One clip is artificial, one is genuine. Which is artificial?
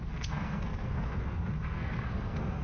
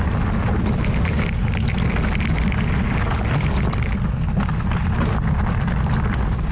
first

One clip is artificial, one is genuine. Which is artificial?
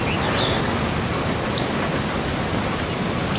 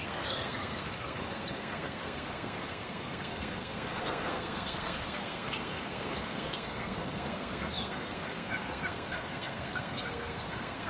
second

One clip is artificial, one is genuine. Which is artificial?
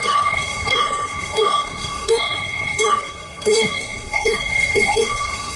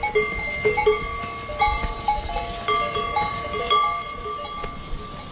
first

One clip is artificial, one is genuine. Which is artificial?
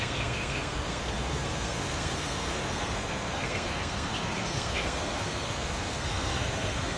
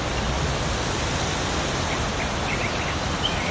first